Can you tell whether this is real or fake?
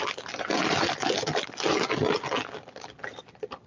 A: real